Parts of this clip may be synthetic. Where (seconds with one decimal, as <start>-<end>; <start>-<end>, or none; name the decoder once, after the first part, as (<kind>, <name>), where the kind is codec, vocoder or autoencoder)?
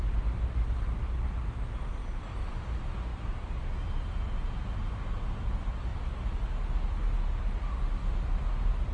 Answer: none